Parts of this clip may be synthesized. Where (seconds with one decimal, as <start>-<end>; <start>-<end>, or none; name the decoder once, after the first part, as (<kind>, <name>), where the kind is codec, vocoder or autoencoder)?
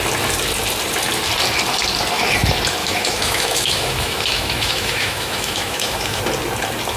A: 2.8-6.2 (autoencoder, DAC-VAE)